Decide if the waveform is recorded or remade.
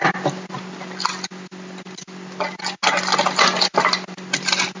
recorded